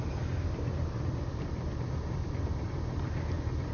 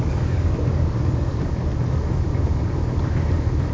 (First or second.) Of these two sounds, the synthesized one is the second